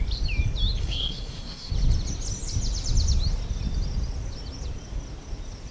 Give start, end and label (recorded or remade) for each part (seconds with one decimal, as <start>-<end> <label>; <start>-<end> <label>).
0.0-0.8 recorded; 0.8-1.7 remade; 1.7-5.7 recorded